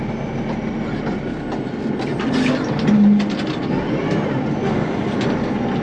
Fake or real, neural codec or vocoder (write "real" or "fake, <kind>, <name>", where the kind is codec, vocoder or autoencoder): real